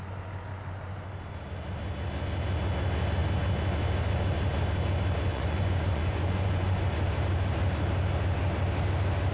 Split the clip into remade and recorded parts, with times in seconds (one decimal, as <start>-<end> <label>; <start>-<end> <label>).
0.0-5.3 recorded; 5.3-6.8 remade; 6.8-9.3 recorded